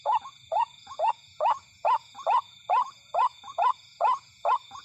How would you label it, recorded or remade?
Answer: remade